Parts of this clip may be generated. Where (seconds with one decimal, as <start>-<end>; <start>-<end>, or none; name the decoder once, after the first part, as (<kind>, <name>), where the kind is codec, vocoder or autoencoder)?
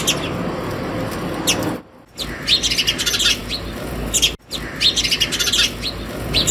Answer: none